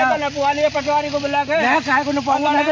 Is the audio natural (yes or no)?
yes